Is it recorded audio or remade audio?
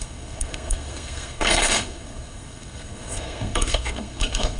remade